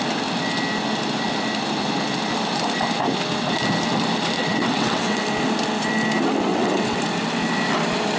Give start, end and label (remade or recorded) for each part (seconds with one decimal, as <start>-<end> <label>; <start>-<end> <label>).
0.0-4.4 recorded; 4.4-5.2 remade; 5.2-6.5 recorded; 6.5-7.0 remade; 7.0-8.2 recorded